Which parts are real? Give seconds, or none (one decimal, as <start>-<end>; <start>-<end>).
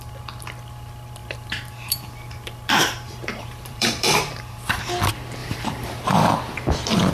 0.0-1.2; 4.9-5.4; 6.3-7.1